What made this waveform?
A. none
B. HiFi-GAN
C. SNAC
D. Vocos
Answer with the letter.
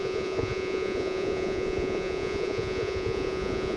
D